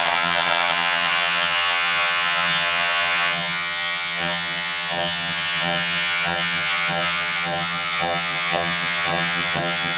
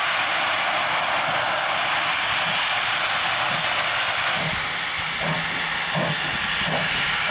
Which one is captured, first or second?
second